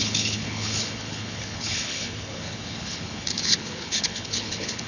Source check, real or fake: fake